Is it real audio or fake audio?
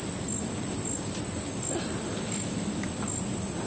real